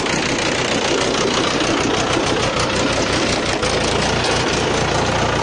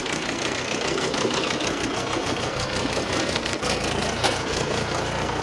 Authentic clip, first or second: first